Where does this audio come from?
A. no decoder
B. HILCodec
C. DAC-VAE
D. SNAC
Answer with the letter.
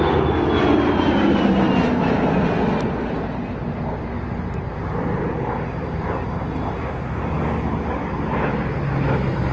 A